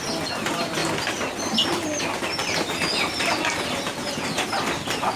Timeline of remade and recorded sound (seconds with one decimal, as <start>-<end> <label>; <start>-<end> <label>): 0.0-0.8 recorded; 0.8-2.0 remade; 2.0-2.4 recorded; 2.4-5.2 remade